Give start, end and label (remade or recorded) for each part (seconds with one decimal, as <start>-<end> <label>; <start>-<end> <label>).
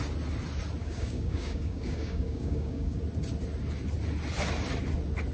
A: 0.0-0.8 recorded; 0.8-3.0 remade; 3.0-5.3 recorded